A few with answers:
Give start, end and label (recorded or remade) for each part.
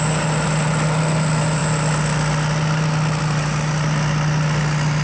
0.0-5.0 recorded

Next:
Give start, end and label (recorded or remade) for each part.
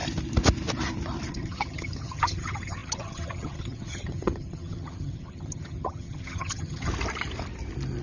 0.0-1.3 recorded; 1.3-6.9 remade; 6.9-8.0 recorded